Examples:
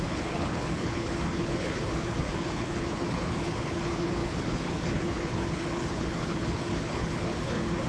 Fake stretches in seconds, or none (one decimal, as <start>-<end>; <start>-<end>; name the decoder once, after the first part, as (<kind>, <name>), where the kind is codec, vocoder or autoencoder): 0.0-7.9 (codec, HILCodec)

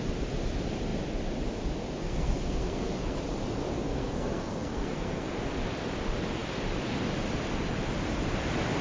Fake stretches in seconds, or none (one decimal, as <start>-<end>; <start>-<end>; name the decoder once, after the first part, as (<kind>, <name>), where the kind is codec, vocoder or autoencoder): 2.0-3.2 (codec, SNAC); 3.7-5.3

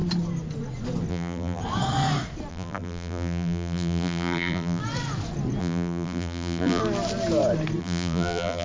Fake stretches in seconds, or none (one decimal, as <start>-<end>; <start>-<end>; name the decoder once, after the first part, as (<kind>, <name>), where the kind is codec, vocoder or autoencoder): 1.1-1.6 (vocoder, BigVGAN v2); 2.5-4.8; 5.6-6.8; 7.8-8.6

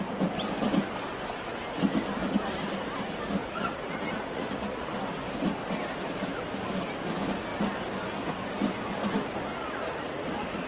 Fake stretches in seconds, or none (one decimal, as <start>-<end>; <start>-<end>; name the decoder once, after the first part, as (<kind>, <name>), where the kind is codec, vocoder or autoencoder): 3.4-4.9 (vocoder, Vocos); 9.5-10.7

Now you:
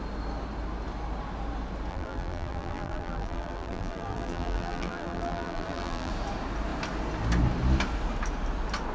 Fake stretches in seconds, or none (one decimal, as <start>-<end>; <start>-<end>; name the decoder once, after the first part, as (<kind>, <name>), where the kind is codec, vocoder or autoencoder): 1.9-6.1 (vocoder, BigVGAN v2)

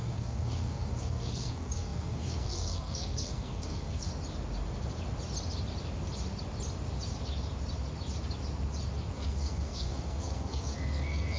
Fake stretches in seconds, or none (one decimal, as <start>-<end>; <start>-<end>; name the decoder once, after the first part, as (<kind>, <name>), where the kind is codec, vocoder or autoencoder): 0.0-4.1 (codec, SNAC); 9.1-11.4

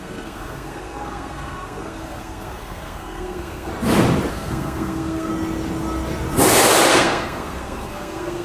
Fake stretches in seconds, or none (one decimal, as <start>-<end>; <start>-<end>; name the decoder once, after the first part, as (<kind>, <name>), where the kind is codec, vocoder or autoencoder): 0.0-3.7 (codec, SNAC); 4.3-5.3; 6.9-8.4